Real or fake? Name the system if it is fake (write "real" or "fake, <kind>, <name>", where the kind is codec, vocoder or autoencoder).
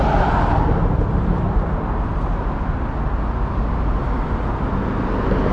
real